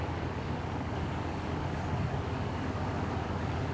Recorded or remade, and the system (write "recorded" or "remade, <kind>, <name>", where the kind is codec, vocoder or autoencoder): remade, codec, DAC